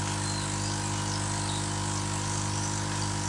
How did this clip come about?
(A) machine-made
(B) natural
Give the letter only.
B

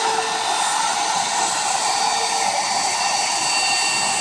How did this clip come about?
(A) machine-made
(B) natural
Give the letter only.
B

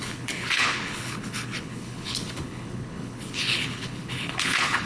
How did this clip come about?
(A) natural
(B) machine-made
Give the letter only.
B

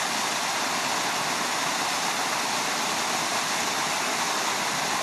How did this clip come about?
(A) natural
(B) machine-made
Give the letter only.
A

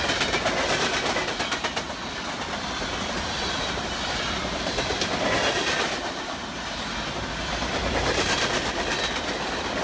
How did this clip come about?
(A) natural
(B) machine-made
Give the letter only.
A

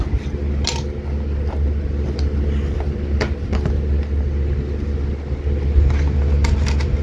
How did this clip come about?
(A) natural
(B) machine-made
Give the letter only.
A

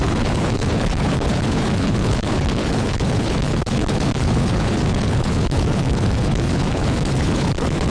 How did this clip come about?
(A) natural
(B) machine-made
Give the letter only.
B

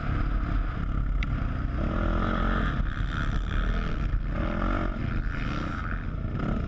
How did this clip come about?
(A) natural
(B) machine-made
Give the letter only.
A